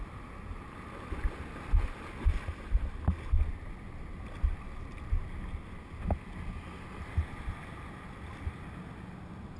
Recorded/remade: recorded